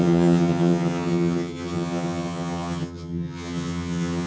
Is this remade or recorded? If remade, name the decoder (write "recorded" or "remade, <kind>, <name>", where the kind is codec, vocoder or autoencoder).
remade, vocoder, HiFi-GAN